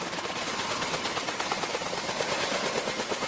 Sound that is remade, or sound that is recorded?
recorded